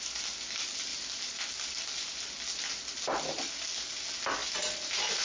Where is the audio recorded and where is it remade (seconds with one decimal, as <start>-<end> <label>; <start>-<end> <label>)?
0.0-5.2 recorded